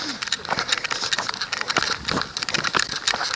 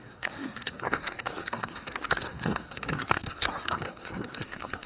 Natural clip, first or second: first